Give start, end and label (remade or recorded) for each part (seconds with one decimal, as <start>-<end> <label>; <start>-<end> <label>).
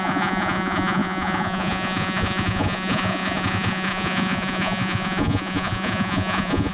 0.0-6.7 remade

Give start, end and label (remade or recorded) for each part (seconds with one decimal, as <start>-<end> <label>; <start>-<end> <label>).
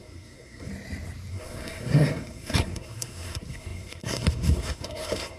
0.0-0.7 remade; 0.7-1.3 recorded; 1.3-5.4 remade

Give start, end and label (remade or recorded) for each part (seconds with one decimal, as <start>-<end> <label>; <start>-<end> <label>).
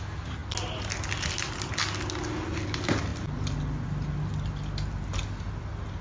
0.0-6.0 recorded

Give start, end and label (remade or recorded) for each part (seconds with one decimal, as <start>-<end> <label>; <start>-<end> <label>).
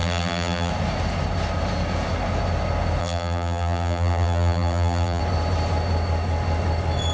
0.0-0.7 remade; 0.7-3.0 recorded; 3.0-5.2 remade; 5.2-7.1 recorded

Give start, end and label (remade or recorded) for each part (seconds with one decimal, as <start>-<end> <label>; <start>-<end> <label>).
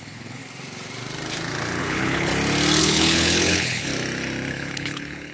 0.0-0.4 remade; 0.4-1.8 recorded; 1.8-2.3 remade; 2.3-2.8 recorded; 2.8-3.9 remade; 3.9-4.5 recorded; 4.5-5.3 remade